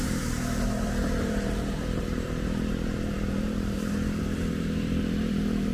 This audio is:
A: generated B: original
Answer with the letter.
A